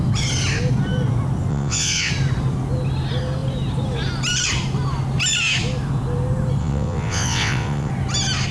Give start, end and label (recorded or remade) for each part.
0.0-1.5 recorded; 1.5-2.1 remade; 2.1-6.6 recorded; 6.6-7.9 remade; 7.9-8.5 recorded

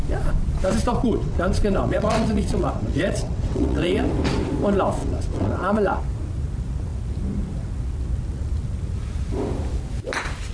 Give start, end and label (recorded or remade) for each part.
0.0-0.9 recorded; 0.9-4.1 remade; 4.1-5.0 recorded; 5.0-6.0 remade; 6.0-10.5 recorded

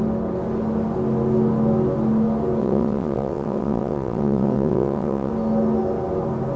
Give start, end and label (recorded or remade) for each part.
0.0-2.6 recorded; 2.6-5.3 remade; 5.3-6.6 recorded

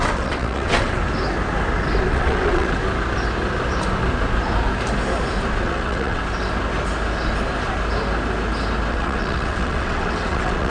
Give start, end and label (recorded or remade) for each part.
0.0-1.0 remade; 1.0-2.1 recorded; 2.1-2.8 remade; 2.8-5.6 recorded; 5.6-6.2 remade; 6.2-8.9 recorded; 8.9-10.7 remade

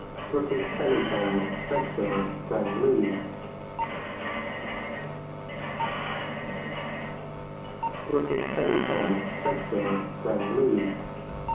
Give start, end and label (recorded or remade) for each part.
0.0-8.1 recorded; 8.1-9.1 remade; 9.1-11.5 recorded

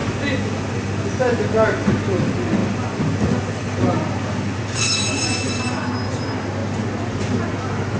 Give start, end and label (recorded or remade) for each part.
0.0-8.0 recorded

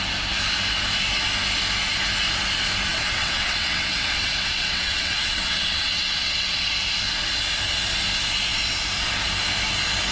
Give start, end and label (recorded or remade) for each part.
0.0-2.9 recorded; 2.9-6.7 remade; 6.7-10.1 recorded